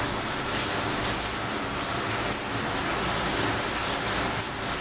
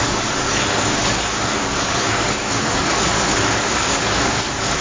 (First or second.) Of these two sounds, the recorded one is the first